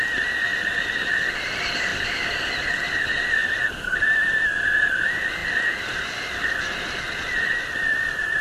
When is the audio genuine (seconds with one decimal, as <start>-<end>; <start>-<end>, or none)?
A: 0.0-3.4; 4.4-5.4; 6.0-8.4